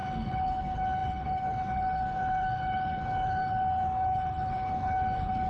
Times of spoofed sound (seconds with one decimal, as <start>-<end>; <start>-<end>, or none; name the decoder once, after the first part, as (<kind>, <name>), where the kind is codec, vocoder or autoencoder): 0.0-5.5 (codec, HILCodec)